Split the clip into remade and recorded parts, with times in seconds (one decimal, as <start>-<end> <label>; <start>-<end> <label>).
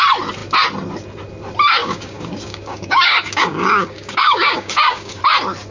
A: 0.0-1.8 recorded; 1.8-5.2 remade; 5.2-5.7 recorded